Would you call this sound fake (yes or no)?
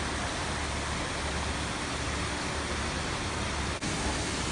no